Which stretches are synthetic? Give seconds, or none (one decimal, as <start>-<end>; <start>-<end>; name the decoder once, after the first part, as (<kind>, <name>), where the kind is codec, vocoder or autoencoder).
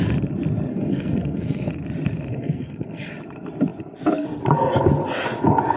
0.7-1.7 (codec, SNAC); 2.3-3.1